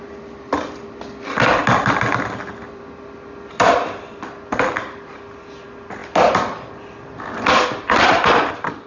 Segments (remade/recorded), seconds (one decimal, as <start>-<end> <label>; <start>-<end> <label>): 0.0-8.9 recorded

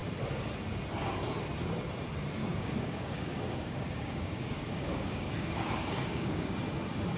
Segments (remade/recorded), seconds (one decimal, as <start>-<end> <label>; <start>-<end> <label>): 0.0-2.4 recorded; 2.4-6.5 remade; 6.5-7.2 recorded

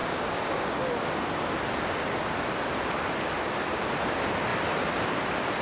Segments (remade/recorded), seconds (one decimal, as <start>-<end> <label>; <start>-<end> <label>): 0.0-0.7 remade; 0.7-5.6 recorded

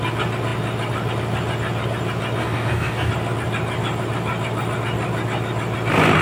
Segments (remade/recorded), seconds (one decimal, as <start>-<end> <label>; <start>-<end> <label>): 0.0-2.4 recorded; 2.4-3.1 remade; 3.1-6.2 recorded

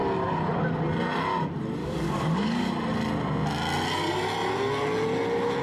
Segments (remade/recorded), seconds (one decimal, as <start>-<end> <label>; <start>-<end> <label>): 0.0-1.8 recorded; 1.8-2.7 remade; 2.7-5.6 recorded

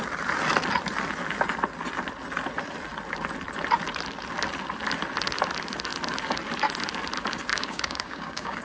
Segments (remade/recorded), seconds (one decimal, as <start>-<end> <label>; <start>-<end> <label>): 0.0-7.5 recorded; 7.5-8.6 remade

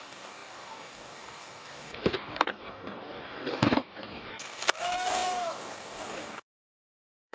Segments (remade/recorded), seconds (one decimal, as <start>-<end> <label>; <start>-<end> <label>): 0.0-7.3 remade

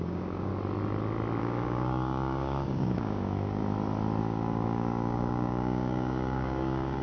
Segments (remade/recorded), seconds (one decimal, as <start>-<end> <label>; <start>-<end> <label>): 0.0-0.5 remade; 0.5-1.4 recorded; 1.4-3.6 remade; 3.6-4.2 recorded; 4.2-7.0 remade